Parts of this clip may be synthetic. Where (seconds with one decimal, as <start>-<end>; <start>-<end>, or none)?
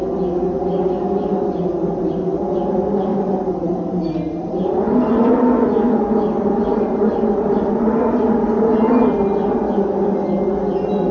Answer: 3.1-4.8; 6.7-7.6